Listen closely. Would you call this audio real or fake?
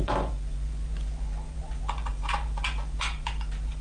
fake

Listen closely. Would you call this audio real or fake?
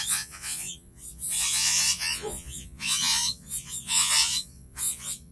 fake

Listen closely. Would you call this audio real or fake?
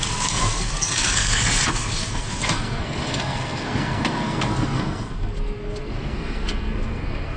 fake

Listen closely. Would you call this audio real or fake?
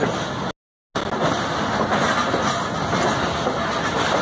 real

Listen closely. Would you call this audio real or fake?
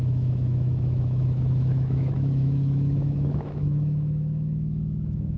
fake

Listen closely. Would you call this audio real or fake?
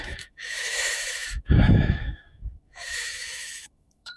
fake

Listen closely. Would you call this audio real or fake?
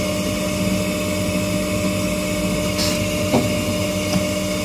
real